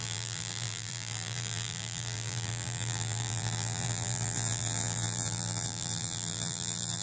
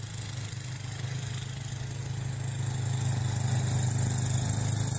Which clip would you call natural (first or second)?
second